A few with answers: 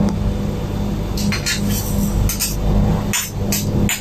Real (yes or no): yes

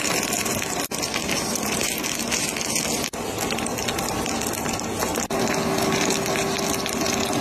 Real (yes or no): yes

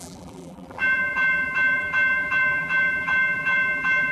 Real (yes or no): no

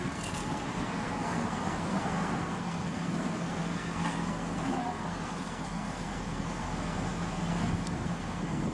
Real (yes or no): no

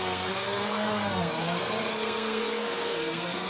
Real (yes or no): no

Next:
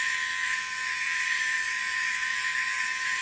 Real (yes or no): no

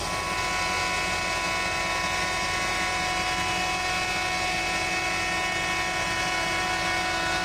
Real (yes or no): yes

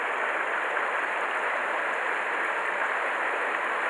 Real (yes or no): yes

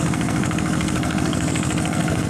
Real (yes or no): no